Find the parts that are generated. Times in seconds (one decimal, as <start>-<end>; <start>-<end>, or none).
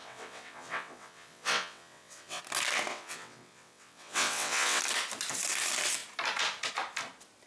0.0-2.4; 2.9-4.8